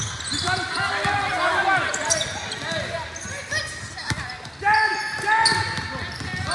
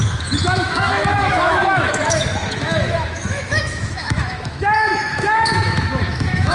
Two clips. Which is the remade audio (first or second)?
second